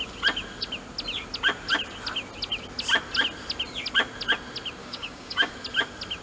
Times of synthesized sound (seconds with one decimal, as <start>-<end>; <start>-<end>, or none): 4.8-5.5